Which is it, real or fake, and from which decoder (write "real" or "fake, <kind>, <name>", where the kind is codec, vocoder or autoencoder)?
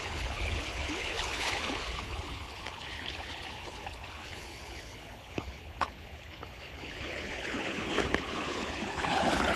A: fake, codec, HILCodec